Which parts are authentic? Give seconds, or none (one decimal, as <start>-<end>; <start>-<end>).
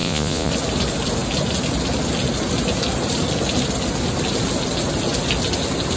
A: 0.5-6.0